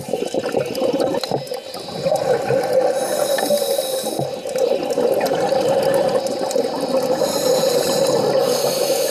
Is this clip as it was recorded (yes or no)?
yes